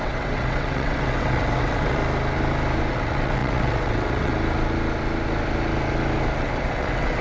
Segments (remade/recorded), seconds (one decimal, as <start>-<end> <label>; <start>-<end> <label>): 0.0-2.0 remade; 2.0-2.9 recorded; 2.9-4.3 remade; 4.3-6.4 recorded; 6.4-7.2 remade